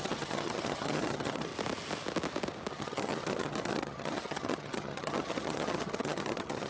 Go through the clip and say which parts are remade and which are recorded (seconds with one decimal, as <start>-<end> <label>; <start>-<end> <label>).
0.0-1.5 remade; 1.5-2.7 recorded; 2.7-6.7 remade